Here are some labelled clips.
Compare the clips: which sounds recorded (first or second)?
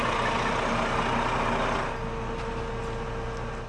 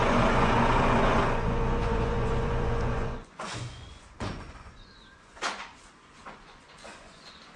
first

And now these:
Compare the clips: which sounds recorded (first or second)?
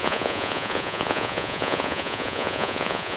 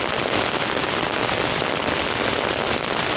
second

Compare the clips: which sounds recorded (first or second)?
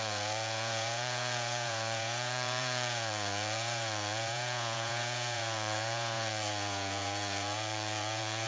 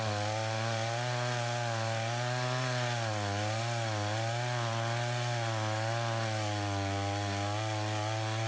second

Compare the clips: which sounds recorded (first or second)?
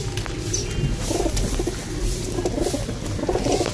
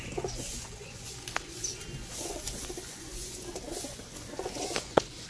first